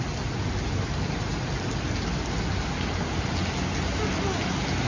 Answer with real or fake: real